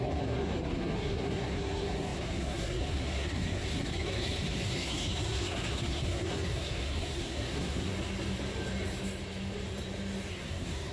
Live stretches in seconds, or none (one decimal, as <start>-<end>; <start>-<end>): 7.9-10.3

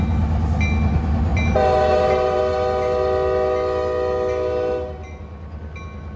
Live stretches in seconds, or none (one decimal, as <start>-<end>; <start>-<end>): 0.0-1.3; 2.4-6.2

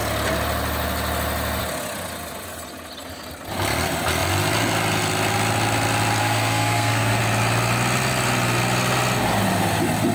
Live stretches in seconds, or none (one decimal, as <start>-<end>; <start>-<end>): 0.0-6.2; 7.2-10.1

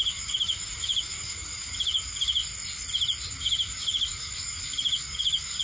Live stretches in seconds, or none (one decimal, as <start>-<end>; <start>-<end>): 2.4-3.4

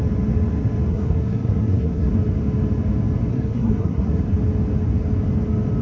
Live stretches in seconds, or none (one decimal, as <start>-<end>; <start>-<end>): 0.0-0.9; 2.1-3.3; 4.2-5.8